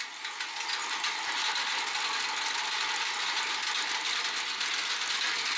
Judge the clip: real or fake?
real